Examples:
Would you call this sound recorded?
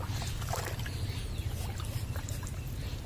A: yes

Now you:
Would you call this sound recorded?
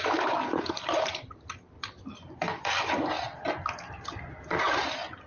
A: no